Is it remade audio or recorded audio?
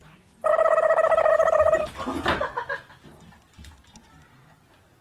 recorded